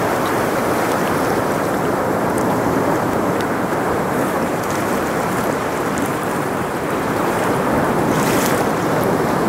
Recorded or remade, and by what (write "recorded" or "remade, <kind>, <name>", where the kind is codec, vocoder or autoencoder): remade, vocoder, BigVGAN v2